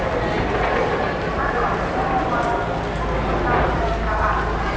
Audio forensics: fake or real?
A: real